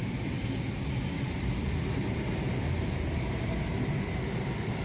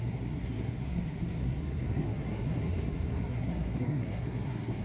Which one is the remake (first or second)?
second